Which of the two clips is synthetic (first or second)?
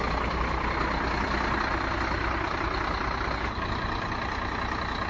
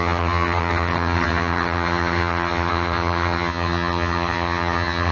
second